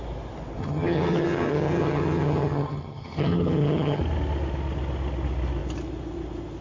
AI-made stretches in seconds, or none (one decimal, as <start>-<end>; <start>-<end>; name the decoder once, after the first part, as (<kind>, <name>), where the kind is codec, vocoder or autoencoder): 0.6-4.0 (vocoder, HiFi-GAN)